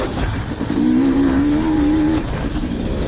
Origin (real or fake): fake